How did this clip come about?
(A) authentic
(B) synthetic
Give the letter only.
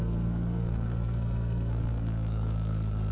B